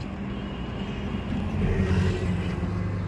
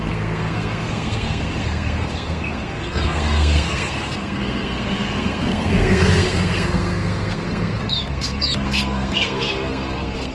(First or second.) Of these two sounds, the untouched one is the first